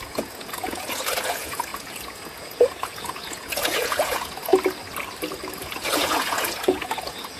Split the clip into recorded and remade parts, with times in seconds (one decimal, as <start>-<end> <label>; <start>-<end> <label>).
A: 0.0-4.5 remade; 4.5-5.6 recorded; 5.6-7.4 remade